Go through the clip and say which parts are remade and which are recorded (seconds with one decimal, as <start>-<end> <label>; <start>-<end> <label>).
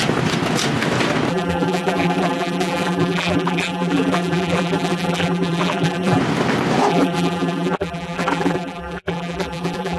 0.0-1.3 recorded; 1.3-6.2 remade; 6.2-6.9 recorded; 6.9-10.0 remade